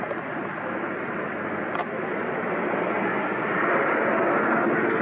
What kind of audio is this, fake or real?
real